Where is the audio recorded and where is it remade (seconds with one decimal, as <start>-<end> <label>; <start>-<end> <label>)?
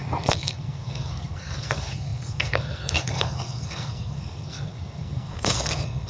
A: 0.0-6.1 remade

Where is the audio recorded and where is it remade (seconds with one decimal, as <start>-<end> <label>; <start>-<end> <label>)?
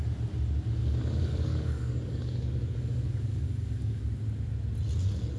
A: 0.0-0.8 recorded; 0.8-4.0 remade; 4.0-5.4 recorded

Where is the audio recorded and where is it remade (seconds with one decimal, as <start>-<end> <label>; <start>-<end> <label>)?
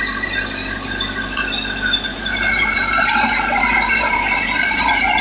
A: 0.0-2.1 recorded; 2.1-5.2 remade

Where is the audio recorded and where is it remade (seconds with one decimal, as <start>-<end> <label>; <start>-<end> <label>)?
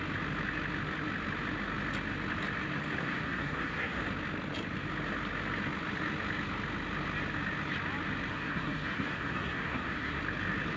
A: 0.0-3.0 recorded; 3.0-4.0 remade; 4.0-8.3 recorded; 8.3-10.2 remade; 10.2-10.8 recorded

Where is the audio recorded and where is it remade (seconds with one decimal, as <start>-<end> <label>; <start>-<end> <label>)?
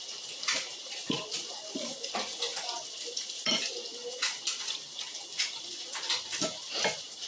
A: 0.0-0.6 recorded; 0.6-1.2 remade; 1.2-7.3 recorded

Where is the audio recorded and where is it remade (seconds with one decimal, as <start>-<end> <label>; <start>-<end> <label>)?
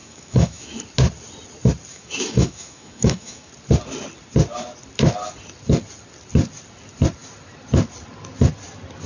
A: 0.0-0.8 remade; 0.8-1.9 recorded; 1.9-3.5 remade; 3.5-9.1 recorded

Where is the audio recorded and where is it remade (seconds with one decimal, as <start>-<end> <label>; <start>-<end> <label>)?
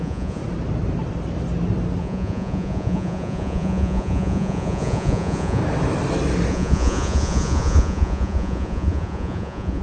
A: 0.0-0.4 remade; 0.4-2.0 recorded; 2.0-5.6 remade; 5.6-6.5 recorded; 6.5-9.8 remade